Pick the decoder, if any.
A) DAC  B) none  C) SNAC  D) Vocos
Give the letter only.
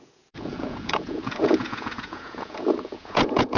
D